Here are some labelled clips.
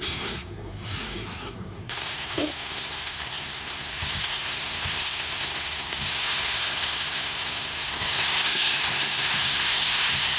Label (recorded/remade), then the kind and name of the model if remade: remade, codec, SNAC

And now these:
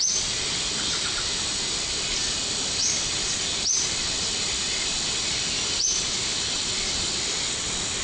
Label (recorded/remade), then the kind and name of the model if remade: recorded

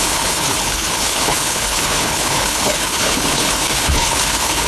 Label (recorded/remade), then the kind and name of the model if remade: remade, codec, HILCodec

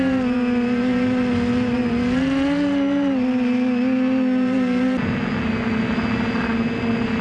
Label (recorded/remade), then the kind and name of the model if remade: recorded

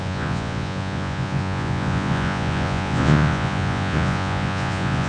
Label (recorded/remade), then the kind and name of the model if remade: remade, vocoder, Vocos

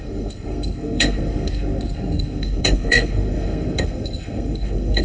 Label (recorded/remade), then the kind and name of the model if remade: remade, codec, SNAC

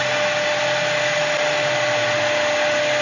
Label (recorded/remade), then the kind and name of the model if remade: recorded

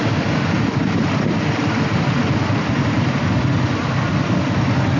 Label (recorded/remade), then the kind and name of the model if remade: recorded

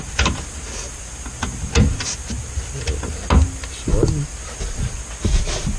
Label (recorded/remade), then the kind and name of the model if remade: recorded